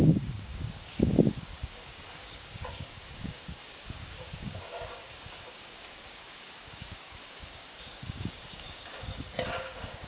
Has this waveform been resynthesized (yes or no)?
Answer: yes